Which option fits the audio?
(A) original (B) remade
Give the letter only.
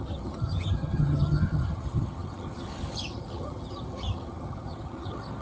B